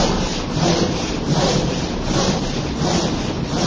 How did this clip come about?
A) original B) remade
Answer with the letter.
A